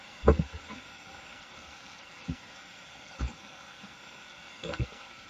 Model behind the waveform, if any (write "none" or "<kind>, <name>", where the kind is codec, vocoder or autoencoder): codec, SNAC